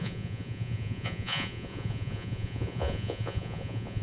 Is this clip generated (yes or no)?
yes